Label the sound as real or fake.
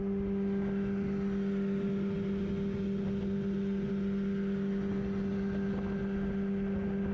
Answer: real